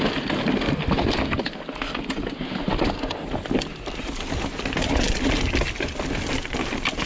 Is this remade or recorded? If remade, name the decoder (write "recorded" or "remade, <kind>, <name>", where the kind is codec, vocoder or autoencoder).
recorded